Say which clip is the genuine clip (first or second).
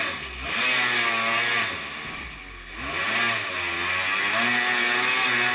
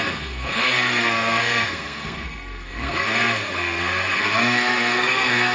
first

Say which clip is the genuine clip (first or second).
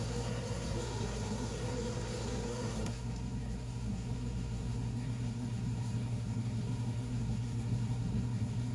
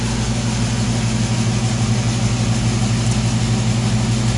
second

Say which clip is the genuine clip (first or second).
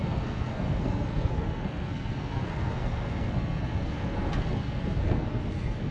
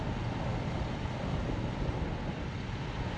second